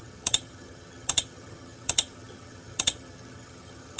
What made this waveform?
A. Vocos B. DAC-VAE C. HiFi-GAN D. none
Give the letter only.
C